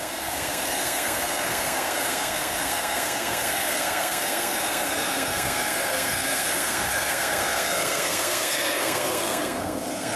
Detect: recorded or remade remade